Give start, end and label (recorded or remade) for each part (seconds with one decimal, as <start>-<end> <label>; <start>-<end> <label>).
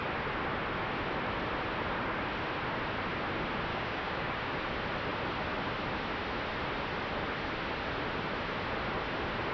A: 0.0-3.7 recorded; 3.7-4.5 remade; 4.5-9.5 recorded